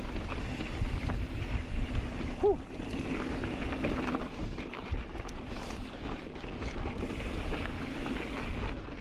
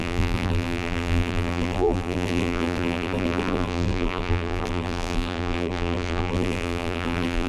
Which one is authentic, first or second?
first